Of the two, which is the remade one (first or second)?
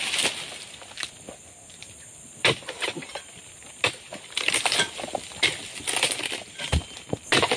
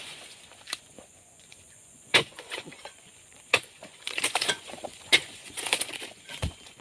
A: second